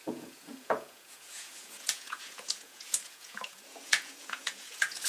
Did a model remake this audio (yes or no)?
yes